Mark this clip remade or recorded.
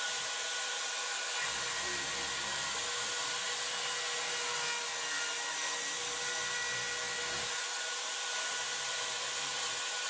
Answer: recorded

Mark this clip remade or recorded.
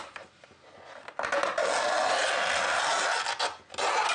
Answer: recorded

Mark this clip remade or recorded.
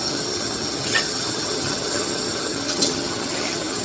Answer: remade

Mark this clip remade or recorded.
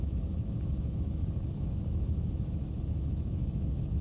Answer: remade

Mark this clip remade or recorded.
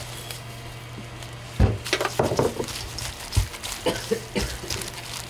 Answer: recorded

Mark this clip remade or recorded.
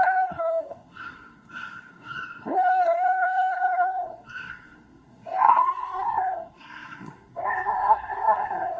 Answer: remade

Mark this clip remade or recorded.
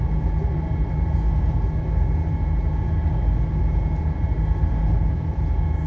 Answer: recorded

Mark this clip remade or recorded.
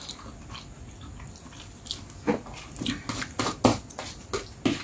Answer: recorded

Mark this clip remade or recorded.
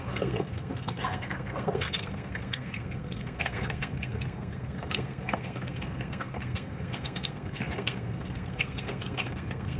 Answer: remade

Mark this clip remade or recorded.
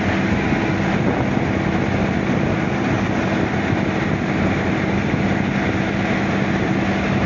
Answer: recorded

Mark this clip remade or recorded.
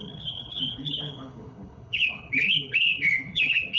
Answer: remade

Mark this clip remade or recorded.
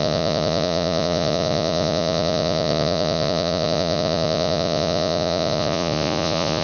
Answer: remade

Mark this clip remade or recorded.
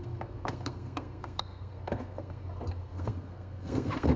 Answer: remade